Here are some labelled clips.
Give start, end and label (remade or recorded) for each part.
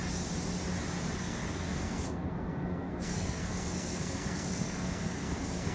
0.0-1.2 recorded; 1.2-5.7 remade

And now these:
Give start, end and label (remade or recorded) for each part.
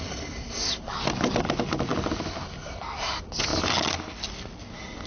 0.0-5.1 recorded